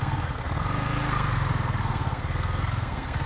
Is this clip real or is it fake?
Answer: fake